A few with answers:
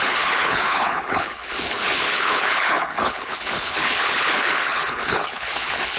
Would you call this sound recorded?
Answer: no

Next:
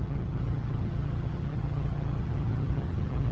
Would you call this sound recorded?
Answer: no